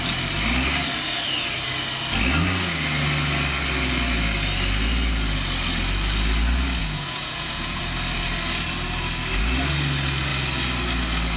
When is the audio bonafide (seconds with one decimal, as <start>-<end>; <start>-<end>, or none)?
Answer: 0.0-6.8; 7.8-11.4